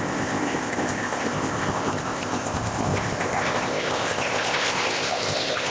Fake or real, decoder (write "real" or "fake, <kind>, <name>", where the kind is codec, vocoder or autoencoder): fake, codec, ZipCodec